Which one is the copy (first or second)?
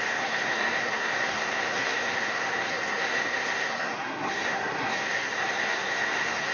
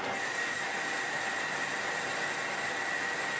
first